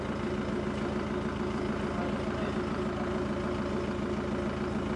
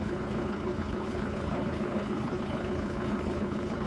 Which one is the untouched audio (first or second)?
first